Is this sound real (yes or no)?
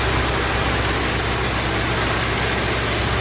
yes